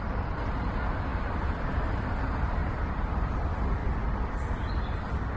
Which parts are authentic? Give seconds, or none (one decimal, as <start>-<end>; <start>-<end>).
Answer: 0.0-1.1; 2.0-2.6; 3.3-5.4